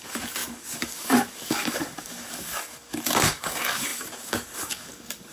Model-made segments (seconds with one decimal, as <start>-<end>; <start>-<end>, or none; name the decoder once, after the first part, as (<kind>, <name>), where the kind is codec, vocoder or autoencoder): 0.0-5.3 (codec, DAC)